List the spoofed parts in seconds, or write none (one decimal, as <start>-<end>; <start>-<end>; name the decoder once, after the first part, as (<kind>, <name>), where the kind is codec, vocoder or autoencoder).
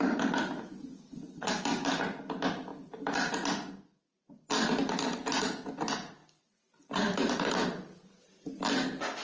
none